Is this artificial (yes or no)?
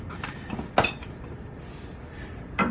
yes